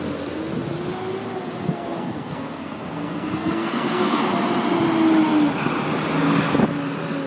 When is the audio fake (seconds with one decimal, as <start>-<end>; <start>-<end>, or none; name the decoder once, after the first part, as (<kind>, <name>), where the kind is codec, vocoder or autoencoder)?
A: 1.7-4.2 (codec, SNAC)